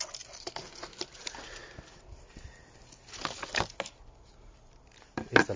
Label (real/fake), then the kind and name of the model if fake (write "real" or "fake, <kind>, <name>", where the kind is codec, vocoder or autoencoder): real